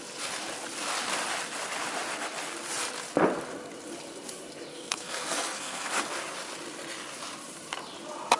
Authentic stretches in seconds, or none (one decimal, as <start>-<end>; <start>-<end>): 0.0-4.7; 5.9-8.4